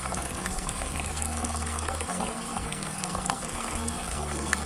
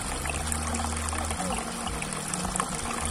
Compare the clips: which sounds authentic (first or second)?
second